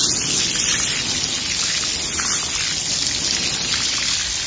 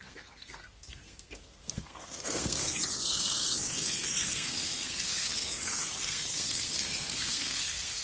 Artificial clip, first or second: second